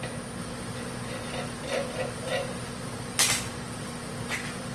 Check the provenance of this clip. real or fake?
real